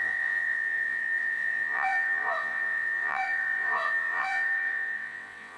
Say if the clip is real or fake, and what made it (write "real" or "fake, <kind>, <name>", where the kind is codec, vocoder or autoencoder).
fake, vocoder, WaveNeXt